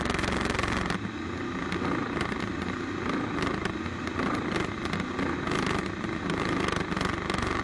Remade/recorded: recorded